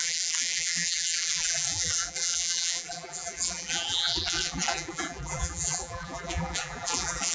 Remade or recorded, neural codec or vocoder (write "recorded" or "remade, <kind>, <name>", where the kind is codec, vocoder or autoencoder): remade, vocoder, BigVGAN v2